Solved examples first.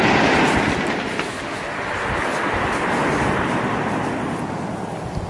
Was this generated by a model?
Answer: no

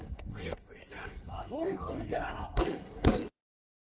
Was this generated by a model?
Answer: yes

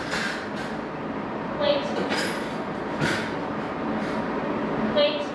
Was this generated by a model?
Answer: no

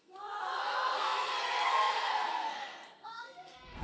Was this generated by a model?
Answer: yes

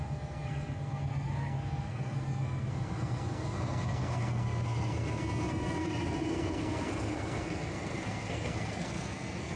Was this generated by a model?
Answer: yes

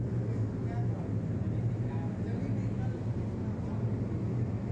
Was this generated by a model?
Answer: no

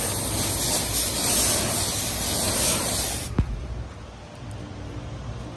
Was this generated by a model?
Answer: no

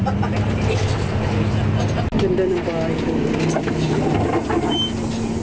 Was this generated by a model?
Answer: no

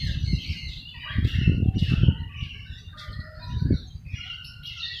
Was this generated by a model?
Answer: no